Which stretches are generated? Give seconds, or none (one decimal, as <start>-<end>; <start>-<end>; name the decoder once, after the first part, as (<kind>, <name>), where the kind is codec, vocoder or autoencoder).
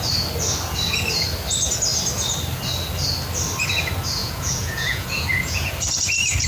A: 4.2-5.7 (vocoder, Vocos)